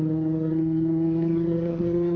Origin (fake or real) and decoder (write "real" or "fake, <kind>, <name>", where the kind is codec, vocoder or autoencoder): fake, codec, SNAC